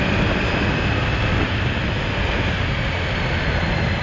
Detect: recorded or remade recorded